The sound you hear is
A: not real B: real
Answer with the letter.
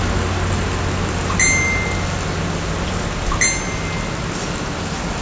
B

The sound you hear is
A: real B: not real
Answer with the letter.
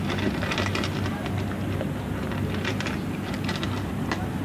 A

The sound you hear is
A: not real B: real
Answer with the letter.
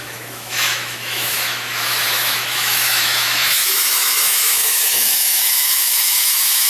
A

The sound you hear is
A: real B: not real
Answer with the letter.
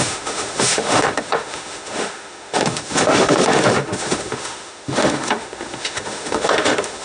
B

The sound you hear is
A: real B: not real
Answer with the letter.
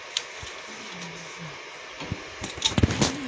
A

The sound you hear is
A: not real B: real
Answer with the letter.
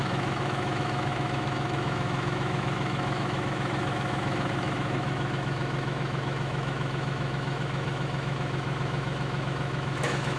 A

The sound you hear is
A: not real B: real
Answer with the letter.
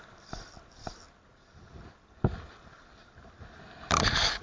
B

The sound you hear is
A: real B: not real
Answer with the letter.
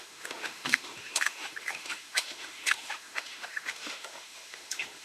B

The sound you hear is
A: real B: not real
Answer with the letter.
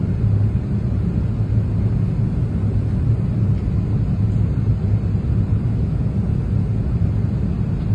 A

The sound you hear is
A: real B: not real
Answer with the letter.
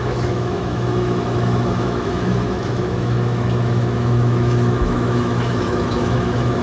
B